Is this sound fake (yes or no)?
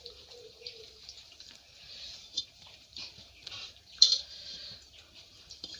yes